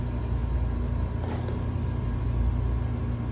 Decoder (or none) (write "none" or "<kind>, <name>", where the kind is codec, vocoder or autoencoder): none